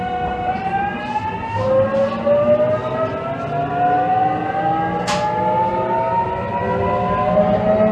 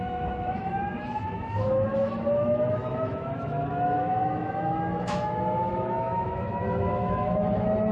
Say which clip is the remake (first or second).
second